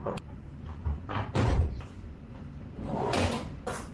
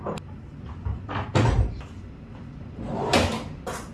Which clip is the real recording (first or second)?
second